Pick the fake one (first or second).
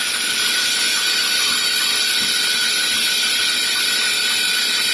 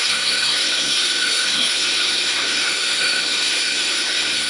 second